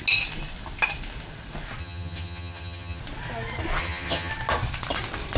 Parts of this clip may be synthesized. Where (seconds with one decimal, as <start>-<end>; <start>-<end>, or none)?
1.8-3.0; 3.8-4.3